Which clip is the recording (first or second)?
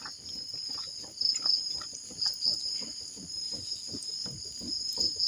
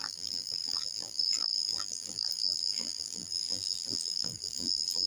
first